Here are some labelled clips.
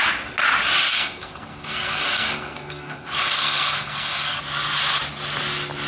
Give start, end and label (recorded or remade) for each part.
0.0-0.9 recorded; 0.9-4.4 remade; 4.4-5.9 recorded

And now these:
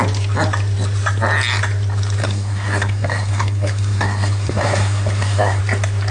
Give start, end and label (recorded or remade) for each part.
0.0-2.2 recorded; 2.2-5.6 remade; 5.6-6.1 recorded

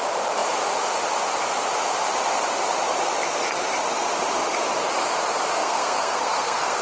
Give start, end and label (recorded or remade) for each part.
0.0-5.6 recorded; 5.6-6.8 remade